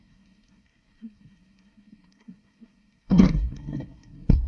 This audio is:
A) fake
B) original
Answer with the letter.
A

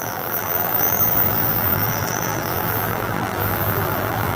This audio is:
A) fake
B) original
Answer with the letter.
A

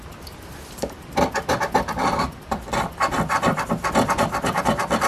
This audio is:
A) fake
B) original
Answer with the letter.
B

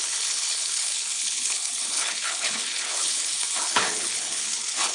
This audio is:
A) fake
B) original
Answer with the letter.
A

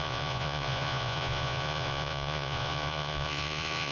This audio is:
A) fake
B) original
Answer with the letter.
A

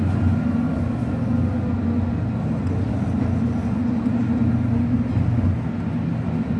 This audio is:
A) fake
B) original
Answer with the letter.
B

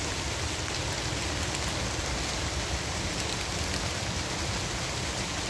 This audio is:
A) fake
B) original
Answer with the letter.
B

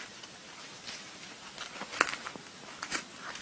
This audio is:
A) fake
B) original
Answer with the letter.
B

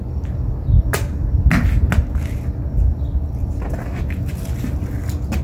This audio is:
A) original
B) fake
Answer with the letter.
A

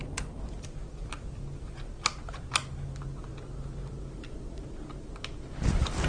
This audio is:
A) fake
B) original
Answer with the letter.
B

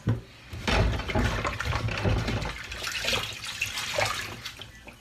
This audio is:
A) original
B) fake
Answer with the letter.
A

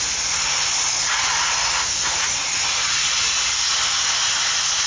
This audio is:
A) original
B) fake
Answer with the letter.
A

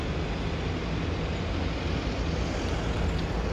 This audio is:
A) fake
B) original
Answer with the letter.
B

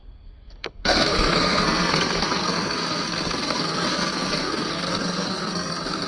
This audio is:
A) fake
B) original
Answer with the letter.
A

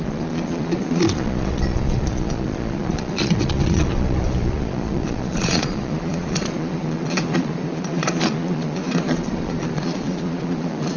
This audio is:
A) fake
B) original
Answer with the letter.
A